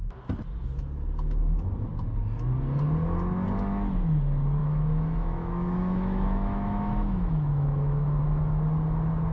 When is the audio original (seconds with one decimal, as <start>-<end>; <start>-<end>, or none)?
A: 0.0-4.6; 8.2-9.3